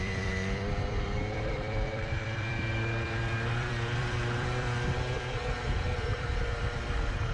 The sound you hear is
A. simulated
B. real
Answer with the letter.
A